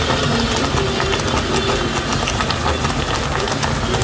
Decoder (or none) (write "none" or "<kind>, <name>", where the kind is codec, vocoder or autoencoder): none